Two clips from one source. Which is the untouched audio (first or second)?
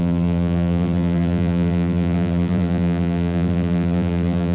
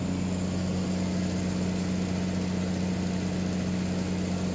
second